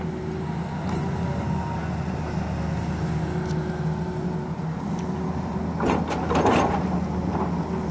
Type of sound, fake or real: real